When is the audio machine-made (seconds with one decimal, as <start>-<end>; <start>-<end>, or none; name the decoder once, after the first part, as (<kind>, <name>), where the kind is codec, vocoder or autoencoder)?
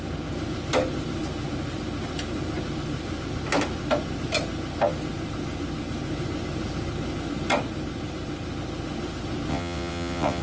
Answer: 9.5-10.4 (vocoder, WaveNeXt)